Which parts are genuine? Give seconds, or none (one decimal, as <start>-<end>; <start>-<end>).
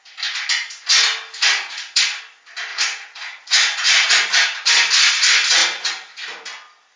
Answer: 0.0-1.4; 2.0-2.7; 4.1-7.0